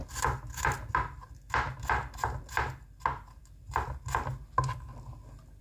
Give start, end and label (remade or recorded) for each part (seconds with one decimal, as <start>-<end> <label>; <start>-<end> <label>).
0.0-5.6 recorded